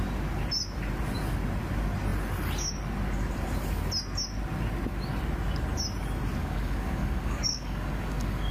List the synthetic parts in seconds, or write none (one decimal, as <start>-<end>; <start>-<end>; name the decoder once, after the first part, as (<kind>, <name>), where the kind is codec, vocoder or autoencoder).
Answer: 6.4-8.5 (codec, DAC)